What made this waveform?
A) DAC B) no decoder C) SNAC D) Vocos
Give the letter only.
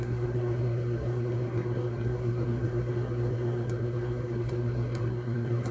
C